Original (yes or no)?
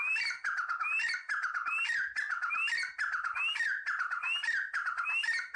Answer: yes